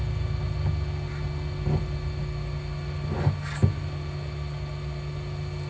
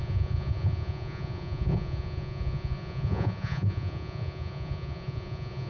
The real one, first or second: first